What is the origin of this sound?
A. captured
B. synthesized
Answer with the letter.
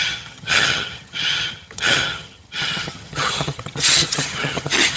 B